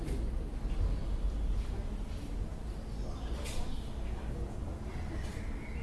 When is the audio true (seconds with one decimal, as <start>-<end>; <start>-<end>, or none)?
0.0-5.8